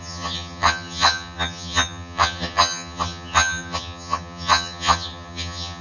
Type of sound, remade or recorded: remade